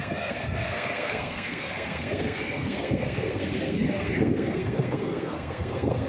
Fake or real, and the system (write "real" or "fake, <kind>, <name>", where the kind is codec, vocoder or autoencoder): fake, codec, SNAC